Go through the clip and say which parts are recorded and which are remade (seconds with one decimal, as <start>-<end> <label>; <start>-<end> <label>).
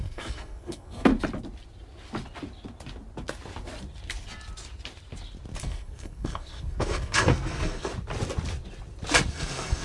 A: 0.0-1.1 remade; 1.1-5.6 recorded; 5.6-7.9 remade; 7.9-9.3 recorded; 9.3-9.8 remade